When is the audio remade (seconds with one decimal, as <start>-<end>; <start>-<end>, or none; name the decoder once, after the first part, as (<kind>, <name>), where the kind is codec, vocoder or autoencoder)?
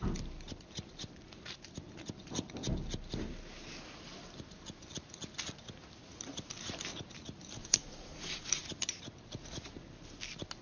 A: 7.6-8.6 (vocoder, Vocos)